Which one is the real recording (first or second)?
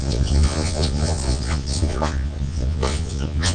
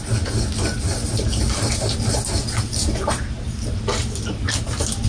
second